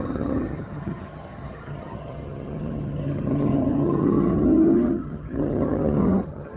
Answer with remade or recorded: remade